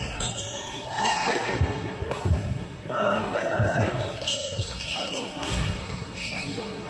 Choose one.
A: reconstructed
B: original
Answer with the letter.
A